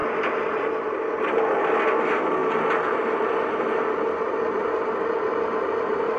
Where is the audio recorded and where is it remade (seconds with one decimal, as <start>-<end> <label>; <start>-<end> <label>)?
0.0-2.4 remade; 2.4-2.9 recorded; 2.9-6.2 remade